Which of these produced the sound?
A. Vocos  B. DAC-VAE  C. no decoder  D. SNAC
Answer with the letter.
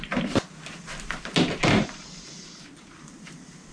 C